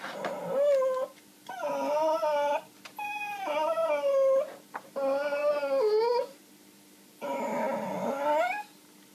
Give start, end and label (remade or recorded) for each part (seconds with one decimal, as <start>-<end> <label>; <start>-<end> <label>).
0.0-9.1 recorded